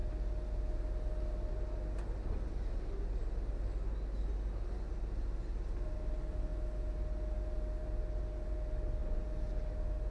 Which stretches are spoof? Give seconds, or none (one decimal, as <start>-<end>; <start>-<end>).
none

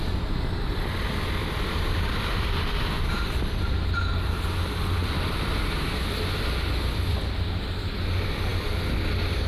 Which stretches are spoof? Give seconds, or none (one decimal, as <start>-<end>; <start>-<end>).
1.4-4.1; 5.0-7.2